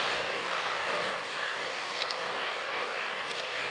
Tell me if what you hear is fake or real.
fake